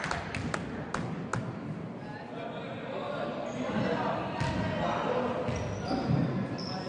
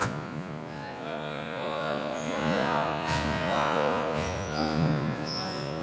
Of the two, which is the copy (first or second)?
second